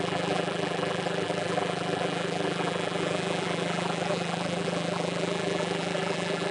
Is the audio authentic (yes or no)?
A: no